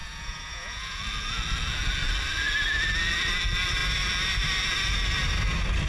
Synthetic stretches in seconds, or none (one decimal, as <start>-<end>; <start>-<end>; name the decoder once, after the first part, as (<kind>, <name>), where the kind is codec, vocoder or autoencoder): 0.0-1.0 (vocoder, Vocos)